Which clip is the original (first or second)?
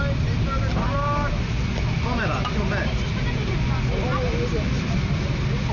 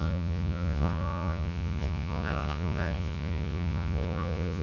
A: first